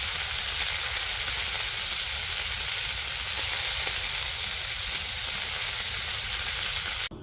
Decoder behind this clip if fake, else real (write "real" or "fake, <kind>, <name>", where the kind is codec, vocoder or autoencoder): real